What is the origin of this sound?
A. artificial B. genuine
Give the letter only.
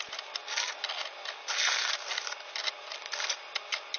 B